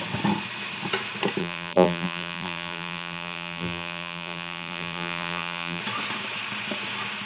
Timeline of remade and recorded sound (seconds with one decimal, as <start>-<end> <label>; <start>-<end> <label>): 0.0-1.4 recorded; 1.4-5.8 remade; 5.8-7.3 recorded